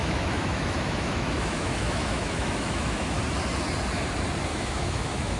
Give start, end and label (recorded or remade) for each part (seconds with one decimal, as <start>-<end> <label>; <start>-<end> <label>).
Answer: 0.0-3.2 remade; 3.2-4.5 recorded; 4.5-5.4 remade